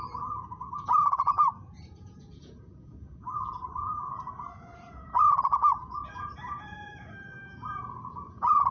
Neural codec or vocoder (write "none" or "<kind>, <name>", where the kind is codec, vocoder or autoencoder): vocoder, Vocos